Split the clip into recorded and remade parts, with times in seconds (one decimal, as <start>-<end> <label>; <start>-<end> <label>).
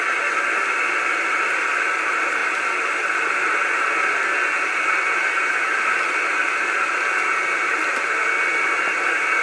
0.0-9.4 recorded